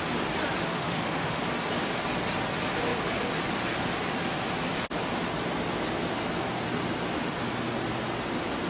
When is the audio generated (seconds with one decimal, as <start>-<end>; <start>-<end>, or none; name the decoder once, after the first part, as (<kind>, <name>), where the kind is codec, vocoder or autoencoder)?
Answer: 0.6-1.4 (autoencoder, DAC-VAE)